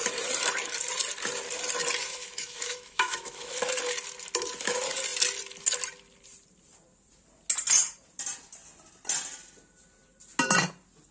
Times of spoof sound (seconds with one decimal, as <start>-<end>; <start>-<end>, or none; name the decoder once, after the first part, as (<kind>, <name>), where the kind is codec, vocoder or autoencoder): 2.0-3.5 (autoencoder, DAC-VAE)